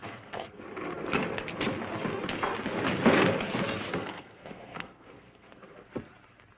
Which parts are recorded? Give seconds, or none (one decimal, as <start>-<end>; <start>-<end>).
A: 0.6-3.9; 5.9-6.6